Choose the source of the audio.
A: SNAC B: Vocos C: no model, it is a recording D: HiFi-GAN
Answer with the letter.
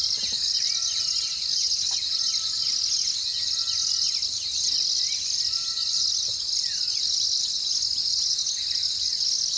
C